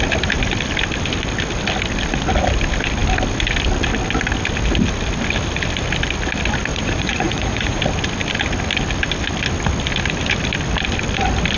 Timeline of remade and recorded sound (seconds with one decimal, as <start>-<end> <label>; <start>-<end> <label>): 0.0-6.7 recorded; 6.7-7.8 remade; 7.8-11.6 recorded